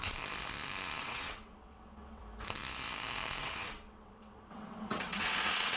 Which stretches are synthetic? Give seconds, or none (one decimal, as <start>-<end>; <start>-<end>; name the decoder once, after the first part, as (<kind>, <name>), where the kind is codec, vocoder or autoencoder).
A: 1.0-2.2 (vocoder, WaveNeXt); 3.4-5.8